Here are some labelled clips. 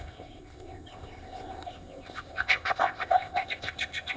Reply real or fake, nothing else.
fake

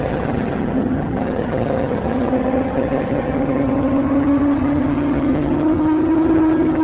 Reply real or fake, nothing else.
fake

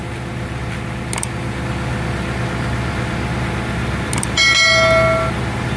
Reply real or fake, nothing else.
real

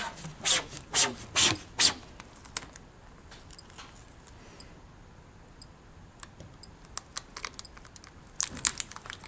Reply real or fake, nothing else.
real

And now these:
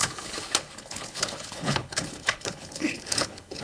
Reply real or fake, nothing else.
fake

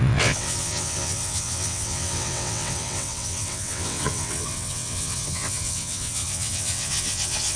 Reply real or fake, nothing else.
fake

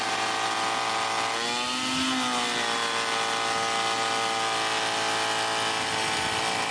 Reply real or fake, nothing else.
real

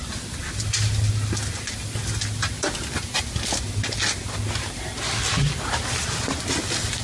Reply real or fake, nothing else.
real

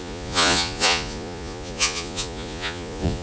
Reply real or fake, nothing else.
fake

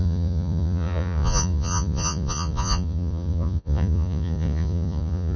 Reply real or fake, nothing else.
fake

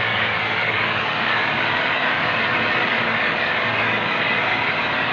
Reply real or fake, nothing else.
fake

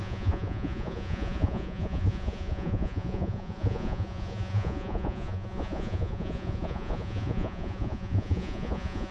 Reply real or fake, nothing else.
fake